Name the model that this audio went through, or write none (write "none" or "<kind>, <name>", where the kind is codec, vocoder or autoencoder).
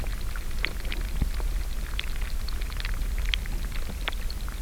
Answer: none